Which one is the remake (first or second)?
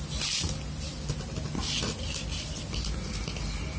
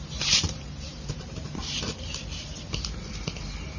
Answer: second